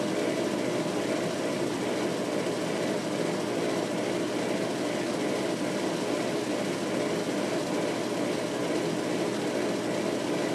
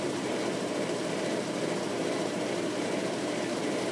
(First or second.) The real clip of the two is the first